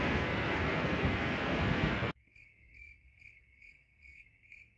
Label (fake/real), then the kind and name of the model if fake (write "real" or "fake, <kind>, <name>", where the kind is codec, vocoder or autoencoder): fake, codec, SNAC